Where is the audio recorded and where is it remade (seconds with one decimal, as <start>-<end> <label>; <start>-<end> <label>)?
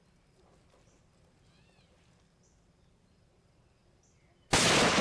0.0-5.0 recorded